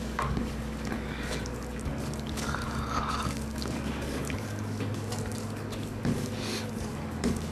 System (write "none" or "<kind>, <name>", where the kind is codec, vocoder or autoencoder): codec, DAC